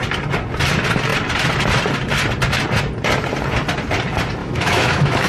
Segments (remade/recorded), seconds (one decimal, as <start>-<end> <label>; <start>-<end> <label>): 0.0-4.4 recorded; 4.4-5.3 remade